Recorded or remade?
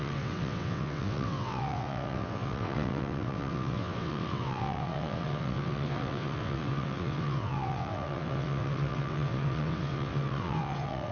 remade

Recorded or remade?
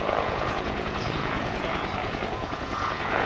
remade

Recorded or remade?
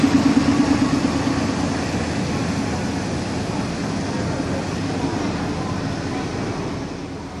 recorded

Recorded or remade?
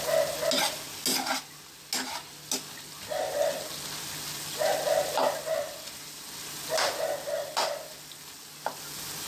recorded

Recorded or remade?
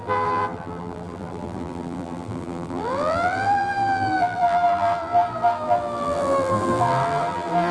remade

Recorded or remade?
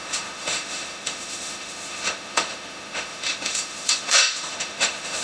remade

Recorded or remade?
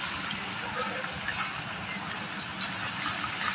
recorded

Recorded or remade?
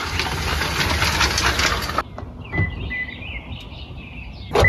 recorded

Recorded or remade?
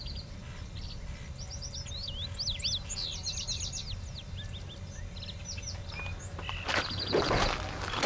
recorded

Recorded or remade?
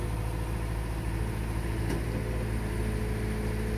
recorded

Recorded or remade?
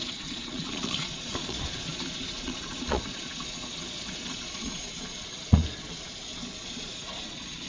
remade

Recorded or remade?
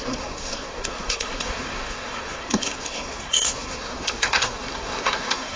remade